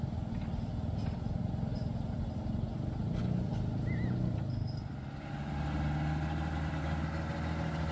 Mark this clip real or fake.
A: real